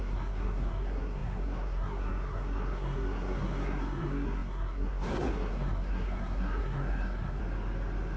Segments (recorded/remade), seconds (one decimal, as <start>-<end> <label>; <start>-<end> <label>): 0.0-7.4 remade; 7.4-8.2 recorded